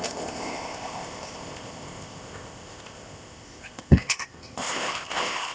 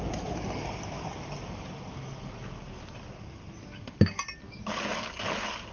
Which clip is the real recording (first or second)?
second